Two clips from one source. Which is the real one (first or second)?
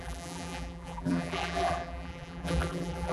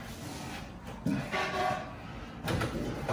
second